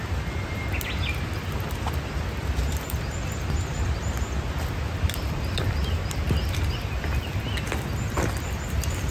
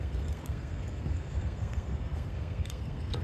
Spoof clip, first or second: second